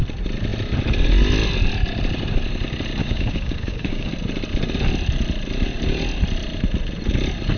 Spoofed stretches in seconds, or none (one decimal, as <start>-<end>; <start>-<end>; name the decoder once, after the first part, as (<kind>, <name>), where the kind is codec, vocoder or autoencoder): 3.0-4.1 (codec, DAC)